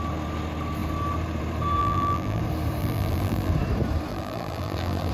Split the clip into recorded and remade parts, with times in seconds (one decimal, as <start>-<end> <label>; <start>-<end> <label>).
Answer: 0.0-1.8 recorded; 1.8-2.4 remade; 2.4-2.8 recorded; 2.8-3.5 remade; 3.5-4.1 recorded; 4.1-5.1 remade